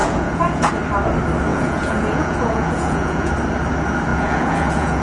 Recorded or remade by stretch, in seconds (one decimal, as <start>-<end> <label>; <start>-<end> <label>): 0.0-0.7 remade; 0.7-1.5 recorded; 1.5-3.3 remade; 3.3-4.1 recorded; 4.1-5.0 remade